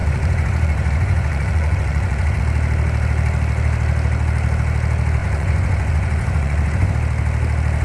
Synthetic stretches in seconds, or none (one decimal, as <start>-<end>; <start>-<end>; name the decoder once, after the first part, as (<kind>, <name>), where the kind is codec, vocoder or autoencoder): 0.0-2.4 (vocoder, Vocos); 5.2-6.9